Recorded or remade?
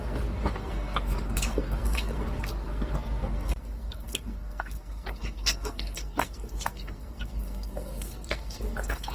remade